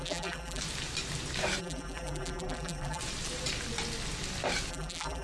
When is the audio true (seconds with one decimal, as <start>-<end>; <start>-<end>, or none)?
0.6-1.6; 3.0-4.7